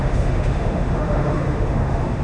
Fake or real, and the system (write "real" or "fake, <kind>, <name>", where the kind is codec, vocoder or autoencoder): fake, autoencoder, DAC-VAE